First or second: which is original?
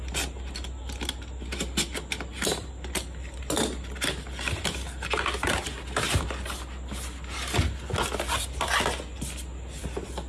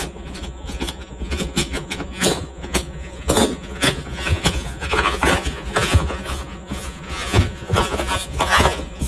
first